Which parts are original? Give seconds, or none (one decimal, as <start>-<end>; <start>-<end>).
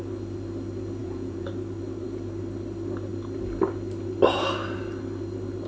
0.0-1.0; 1.5-5.7